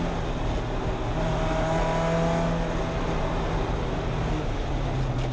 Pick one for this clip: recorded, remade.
recorded